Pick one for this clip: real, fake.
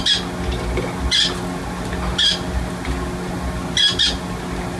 real